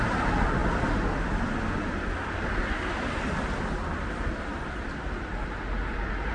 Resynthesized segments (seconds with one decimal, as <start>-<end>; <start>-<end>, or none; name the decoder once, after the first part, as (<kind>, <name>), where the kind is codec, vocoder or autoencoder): none